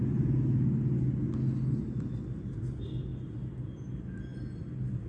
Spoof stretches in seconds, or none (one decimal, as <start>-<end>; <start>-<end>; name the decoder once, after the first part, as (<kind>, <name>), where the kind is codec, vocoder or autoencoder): none